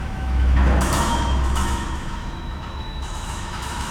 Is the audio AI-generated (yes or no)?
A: yes